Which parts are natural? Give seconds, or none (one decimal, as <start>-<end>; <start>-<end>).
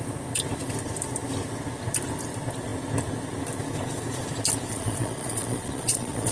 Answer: 0.0-4.7